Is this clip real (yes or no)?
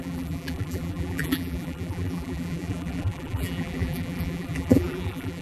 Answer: no